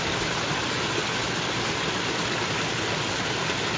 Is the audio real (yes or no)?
yes